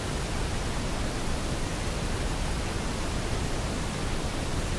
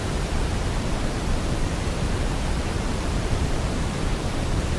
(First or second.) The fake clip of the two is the second